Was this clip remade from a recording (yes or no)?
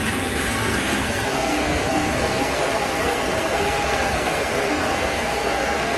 yes